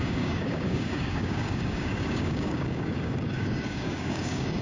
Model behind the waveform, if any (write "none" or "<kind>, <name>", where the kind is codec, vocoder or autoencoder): codec, DAC